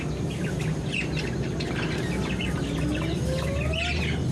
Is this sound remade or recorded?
recorded